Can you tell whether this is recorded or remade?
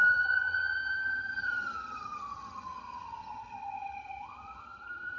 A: remade